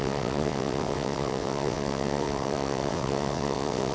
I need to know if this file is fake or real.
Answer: fake